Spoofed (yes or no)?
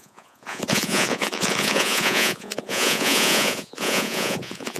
yes